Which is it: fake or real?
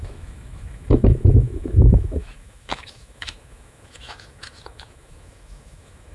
fake